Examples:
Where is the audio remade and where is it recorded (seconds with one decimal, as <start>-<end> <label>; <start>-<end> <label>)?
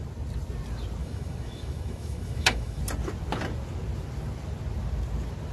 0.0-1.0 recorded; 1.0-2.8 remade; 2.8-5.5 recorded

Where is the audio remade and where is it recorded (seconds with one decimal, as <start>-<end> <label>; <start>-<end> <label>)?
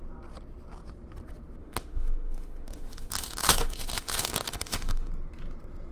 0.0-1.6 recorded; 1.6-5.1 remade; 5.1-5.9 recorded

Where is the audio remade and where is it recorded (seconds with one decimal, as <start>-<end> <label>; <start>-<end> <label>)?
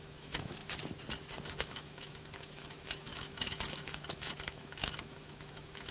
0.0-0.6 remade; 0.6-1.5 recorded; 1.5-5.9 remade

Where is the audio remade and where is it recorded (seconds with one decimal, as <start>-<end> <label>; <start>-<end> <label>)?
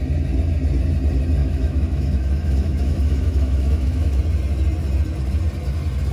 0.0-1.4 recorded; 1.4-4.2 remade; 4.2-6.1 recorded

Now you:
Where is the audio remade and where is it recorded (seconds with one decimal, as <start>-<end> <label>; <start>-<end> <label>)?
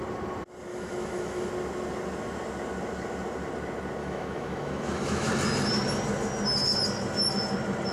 0.0-0.7 recorded; 0.7-1.5 remade; 1.5-4.0 recorded; 4.0-5.3 remade; 5.3-7.9 recorded